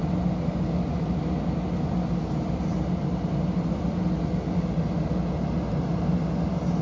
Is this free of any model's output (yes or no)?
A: yes